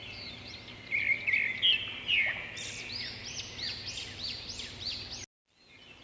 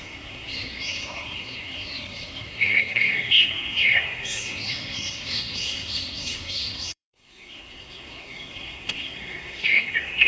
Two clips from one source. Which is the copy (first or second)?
second